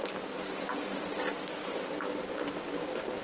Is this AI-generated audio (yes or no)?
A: no